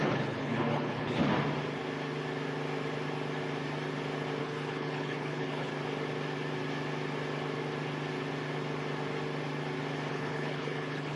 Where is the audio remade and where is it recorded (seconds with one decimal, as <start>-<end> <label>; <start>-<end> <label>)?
0.0-1.2 remade; 1.2-4.4 recorded; 4.4-5.7 remade; 5.7-10.1 recorded; 10.1-11.2 remade